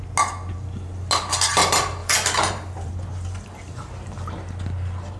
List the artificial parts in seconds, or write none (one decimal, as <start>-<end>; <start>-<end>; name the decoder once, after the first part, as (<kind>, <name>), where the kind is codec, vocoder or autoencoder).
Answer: 2.0-2.9 (vocoder, BigVGAN v2)